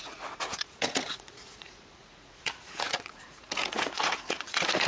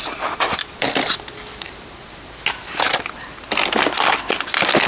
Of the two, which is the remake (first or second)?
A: first